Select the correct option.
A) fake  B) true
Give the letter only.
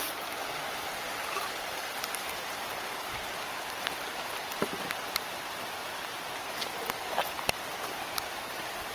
B